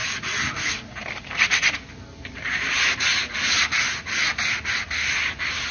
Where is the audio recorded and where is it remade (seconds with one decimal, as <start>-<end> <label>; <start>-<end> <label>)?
0.0-5.7 recorded